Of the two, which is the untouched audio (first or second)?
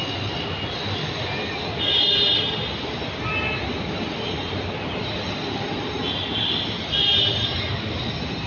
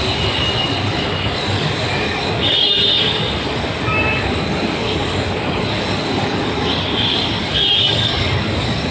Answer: first